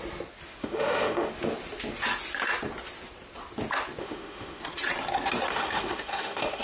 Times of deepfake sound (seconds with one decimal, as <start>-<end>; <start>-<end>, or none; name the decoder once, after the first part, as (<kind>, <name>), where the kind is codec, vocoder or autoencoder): 0.6-1.3 (autoencoder, DAC-VAE); 4.0-4.6; 5.5-6.6

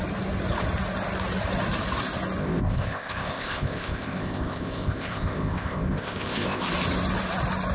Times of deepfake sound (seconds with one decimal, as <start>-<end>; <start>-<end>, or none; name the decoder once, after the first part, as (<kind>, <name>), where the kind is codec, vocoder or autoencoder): 2.4-6.7 (codec, ZipCodec)